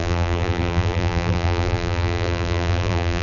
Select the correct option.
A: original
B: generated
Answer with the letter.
B